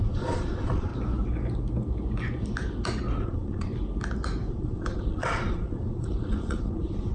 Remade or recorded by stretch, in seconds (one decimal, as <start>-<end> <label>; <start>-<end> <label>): 0.0-0.9 remade; 0.9-3.2 recorded; 3.2-3.7 remade; 3.7-4.5 recorded; 4.5-7.1 remade